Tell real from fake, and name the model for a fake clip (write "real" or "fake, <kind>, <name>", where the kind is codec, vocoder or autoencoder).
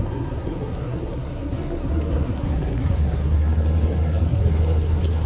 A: fake, codec, SNAC